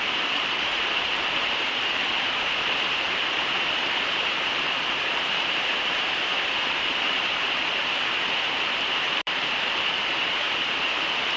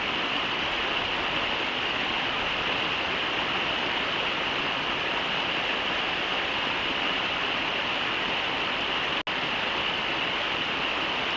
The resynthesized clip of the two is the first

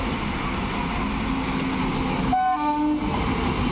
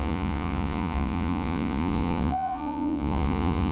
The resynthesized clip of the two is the second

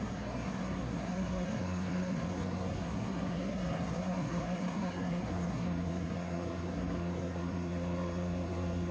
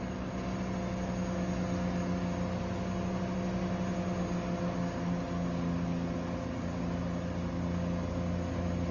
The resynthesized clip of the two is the first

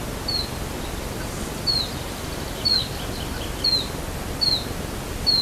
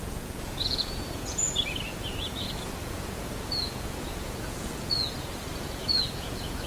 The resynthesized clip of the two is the second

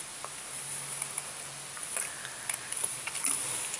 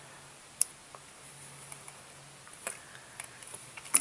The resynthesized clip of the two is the first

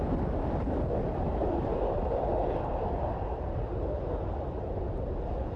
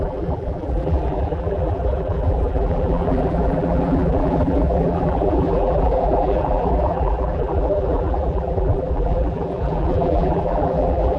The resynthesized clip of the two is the second